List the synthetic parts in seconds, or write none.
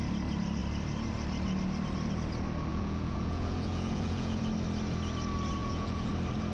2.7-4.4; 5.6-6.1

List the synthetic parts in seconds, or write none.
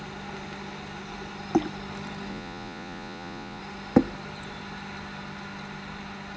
2.3-3.6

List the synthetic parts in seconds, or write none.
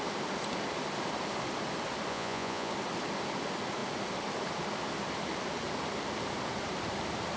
2.1-2.7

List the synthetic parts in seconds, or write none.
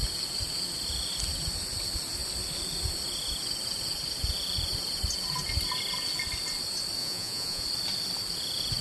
7.0-7.6